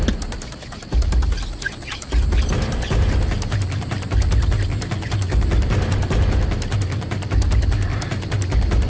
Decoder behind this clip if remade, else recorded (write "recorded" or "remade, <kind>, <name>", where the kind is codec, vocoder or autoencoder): recorded